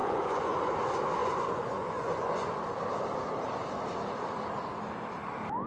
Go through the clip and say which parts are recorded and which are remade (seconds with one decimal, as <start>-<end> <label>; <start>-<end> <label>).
0.0-0.7 remade; 0.7-1.2 recorded; 1.2-2.5 remade; 2.5-5.7 recorded